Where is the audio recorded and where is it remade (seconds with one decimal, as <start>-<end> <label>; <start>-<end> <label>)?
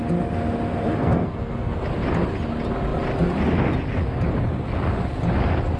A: 0.0-1.0 recorded; 1.0-1.8 remade; 1.8-5.8 recorded